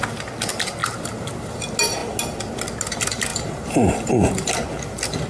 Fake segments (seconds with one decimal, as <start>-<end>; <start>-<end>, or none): 0.8-1.6; 3.3-4.5